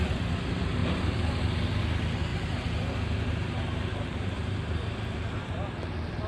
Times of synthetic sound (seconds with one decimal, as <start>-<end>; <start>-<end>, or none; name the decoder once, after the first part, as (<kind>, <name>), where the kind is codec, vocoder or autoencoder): 0.8-1.4 (vocoder, BigVGAN v2); 2.3-5.5

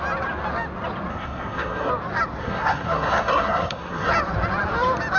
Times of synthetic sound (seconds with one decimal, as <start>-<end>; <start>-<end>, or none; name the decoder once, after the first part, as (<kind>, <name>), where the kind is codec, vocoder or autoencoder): 1.1-1.9 (codec, SNAC); 2.4-4.1

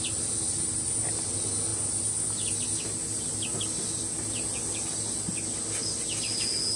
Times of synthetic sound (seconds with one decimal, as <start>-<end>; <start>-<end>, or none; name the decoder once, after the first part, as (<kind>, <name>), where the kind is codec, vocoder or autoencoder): none

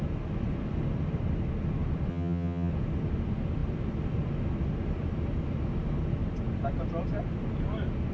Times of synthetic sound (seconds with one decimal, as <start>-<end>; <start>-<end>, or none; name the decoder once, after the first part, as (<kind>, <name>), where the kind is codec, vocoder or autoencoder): 2.1-2.7 (vocoder, HiFi-GAN)

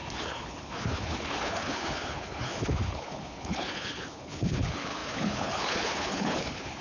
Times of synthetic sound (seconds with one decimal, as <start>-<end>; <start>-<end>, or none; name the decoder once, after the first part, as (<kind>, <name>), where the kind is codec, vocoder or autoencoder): 0.0-6.8 (codec, HILCodec)